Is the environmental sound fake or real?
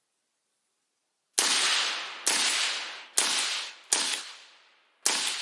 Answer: real